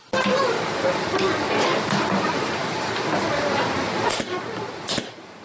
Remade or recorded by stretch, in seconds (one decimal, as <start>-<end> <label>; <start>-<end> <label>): 0.0-5.4 recorded